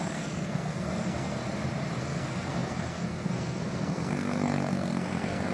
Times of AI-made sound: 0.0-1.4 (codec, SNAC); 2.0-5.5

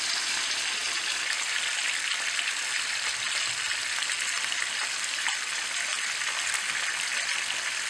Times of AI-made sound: none

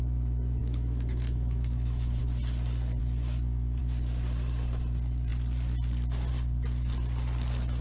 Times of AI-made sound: 0.6-2.2 (autoencoder, DAC-VAE); 3.0-3.8

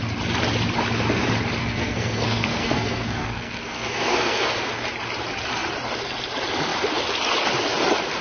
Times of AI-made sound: 1.6-4.5 (codec, SNAC)

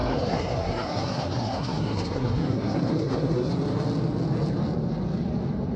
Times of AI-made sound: 0.0-3.5 (codec, SNAC)

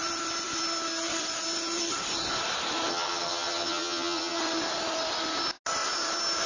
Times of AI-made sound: 2.9-4.4 (vocoder, HiFi-GAN)